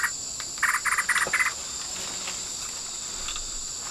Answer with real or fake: real